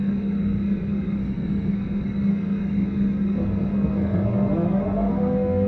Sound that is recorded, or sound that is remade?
remade